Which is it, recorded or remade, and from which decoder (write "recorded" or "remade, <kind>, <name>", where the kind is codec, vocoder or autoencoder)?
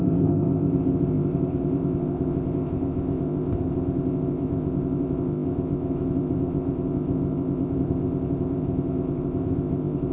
remade, codec, ZipCodec